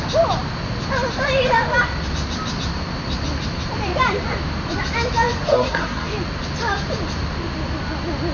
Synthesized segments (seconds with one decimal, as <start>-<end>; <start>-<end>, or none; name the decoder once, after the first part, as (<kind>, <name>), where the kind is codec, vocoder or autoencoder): 5.5-6.1 (codec, SNAC)

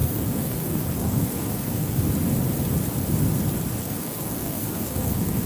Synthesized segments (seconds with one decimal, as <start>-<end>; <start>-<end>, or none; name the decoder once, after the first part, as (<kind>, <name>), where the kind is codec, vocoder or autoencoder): 0.0-2.0 (codec, SNAC); 3.8-5.5

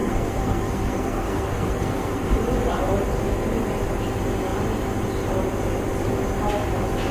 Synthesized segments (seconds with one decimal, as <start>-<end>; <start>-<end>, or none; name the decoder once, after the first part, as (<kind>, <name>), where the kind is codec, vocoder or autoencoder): 0.0-2.3 (codec, SNAC)

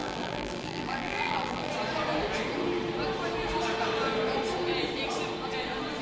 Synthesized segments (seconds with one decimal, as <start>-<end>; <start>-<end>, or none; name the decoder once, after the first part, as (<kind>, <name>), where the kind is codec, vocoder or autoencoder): 0.0-1.7 (vocoder, BigVGAN v2)

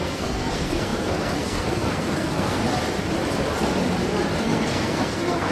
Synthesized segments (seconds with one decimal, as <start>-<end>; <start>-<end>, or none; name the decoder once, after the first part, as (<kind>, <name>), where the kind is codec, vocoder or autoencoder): 0.0-2.6 (codec, SNAC); 4.4-5.5

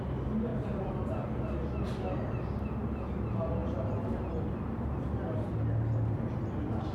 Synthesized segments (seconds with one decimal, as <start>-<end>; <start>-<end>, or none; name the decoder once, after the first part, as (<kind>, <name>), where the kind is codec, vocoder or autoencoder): none